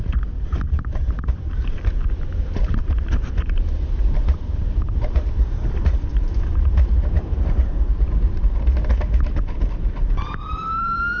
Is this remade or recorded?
remade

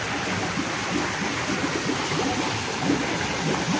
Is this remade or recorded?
recorded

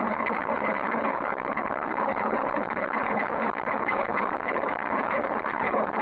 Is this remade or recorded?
remade